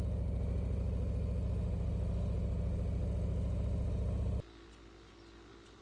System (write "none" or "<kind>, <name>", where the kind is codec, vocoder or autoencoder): none